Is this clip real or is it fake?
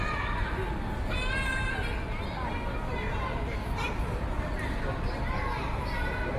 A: real